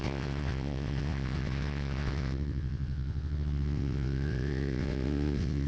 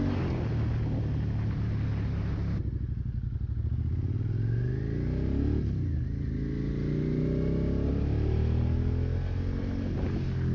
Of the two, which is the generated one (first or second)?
first